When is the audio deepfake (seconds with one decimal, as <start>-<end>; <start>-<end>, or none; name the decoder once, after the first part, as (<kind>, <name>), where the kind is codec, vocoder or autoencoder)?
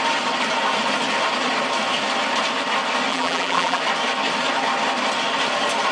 3.1-3.8 (vocoder, BigVGAN v2)